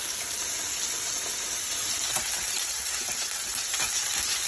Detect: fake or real real